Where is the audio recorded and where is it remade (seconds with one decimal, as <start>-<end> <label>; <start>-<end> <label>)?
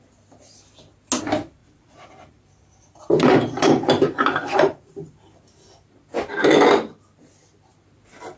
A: 0.0-1.6 recorded; 1.6-5.6 remade; 5.6-8.4 recorded